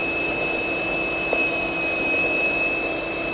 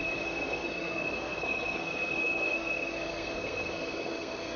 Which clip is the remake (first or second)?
second